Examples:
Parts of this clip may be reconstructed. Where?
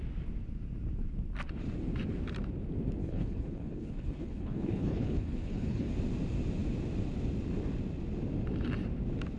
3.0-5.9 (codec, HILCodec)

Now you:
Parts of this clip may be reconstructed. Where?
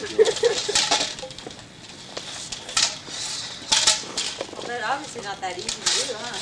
none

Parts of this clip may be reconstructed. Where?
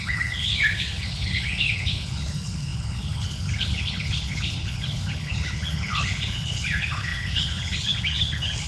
0.0-8.7 (codec, HILCodec)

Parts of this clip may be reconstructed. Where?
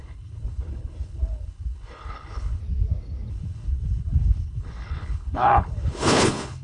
0.0-2.6 (codec, HILCodec); 3.3-6.6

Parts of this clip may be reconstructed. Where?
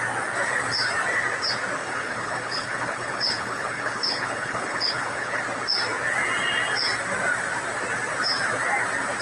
1.8-5.4 (codec, HILCodec)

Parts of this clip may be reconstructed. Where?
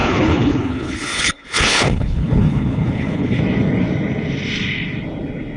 0.0-3.4 (codec, HILCodec)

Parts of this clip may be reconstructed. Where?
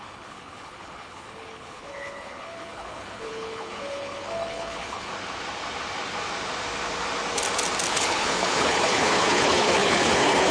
0.0-5.1 (codec, HILCodec); 7.9-10.5